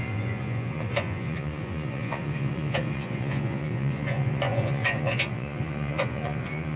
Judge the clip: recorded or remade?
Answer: remade